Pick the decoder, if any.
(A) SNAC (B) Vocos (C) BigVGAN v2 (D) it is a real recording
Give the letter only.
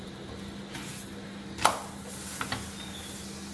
C